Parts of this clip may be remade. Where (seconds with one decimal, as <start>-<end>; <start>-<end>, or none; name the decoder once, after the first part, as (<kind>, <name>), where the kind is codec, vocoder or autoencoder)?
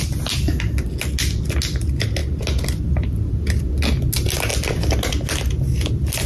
none